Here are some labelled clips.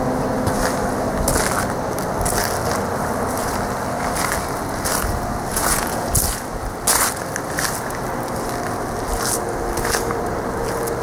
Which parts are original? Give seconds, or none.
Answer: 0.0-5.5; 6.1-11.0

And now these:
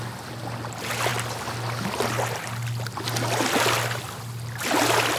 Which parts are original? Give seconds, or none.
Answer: 0.0-5.2

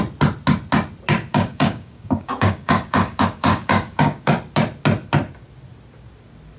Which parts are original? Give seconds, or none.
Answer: 0.0-1.3; 4.3-6.6

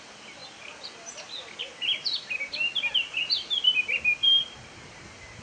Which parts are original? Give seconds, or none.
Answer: 0.0-5.4

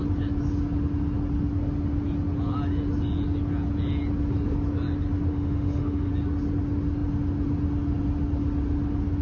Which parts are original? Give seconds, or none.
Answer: 0.0-5.3; 6.1-9.2